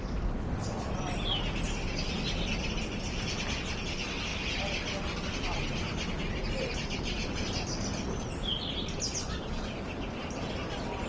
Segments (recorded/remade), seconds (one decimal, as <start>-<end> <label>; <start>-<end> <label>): 0.0-11.1 recorded